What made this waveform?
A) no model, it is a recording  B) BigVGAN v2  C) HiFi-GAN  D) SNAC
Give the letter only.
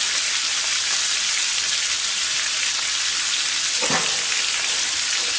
A